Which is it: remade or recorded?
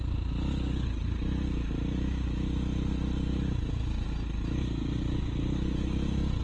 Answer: recorded